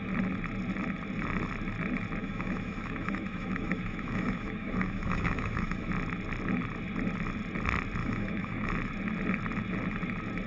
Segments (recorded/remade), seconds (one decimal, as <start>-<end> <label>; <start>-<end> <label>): 0.0-2.2 recorded; 2.2-5.9 remade; 5.9-8.0 recorded; 8.0-8.7 remade; 8.7-10.5 recorded